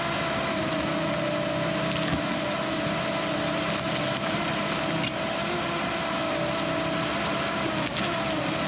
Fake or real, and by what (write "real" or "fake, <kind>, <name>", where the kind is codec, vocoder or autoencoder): real